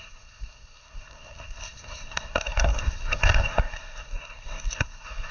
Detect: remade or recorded remade